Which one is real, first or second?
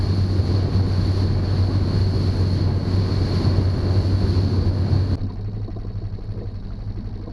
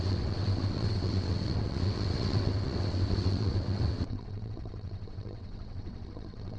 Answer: first